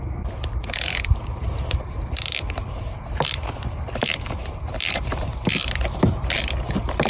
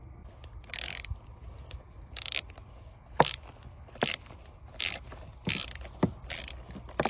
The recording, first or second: second